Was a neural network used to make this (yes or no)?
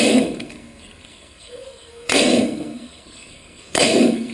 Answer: yes